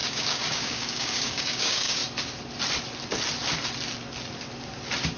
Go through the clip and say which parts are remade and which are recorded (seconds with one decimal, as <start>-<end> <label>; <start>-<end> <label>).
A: 0.0-2.0 remade; 2.0-5.2 recorded